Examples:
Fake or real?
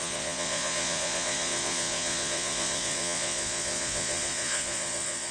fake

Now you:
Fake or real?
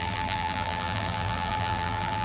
fake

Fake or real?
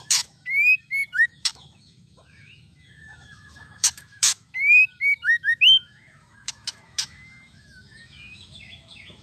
fake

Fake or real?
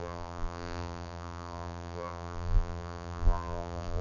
fake